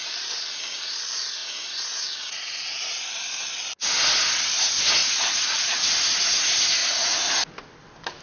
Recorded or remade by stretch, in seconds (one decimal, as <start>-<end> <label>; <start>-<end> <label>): 0.0-1.4 recorded; 1.4-2.9 remade; 2.9-5.0 recorded; 5.0-5.9 remade; 5.9-6.8 recorded; 6.8-7.3 remade; 7.3-8.2 recorded